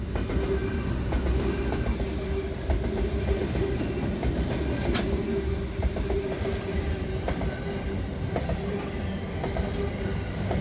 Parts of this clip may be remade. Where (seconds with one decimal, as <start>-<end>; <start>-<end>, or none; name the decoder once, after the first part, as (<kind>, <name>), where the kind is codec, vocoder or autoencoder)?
none